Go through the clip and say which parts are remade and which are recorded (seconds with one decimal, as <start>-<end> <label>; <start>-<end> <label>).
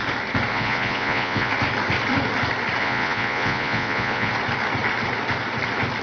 0.0-0.5 recorded; 0.5-1.5 remade; 1.5-2.8 recorded; 2.8-4.3 remade; 4.3-6.0 recorded